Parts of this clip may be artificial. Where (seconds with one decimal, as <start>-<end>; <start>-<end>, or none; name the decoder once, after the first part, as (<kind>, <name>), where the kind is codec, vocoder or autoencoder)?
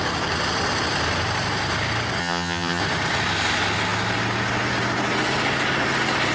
2.2-2.8 (vocoder, HiFi-GAN)